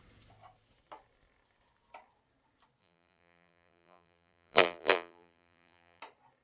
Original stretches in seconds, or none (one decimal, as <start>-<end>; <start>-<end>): 0.0-2.8; 6.0-6.4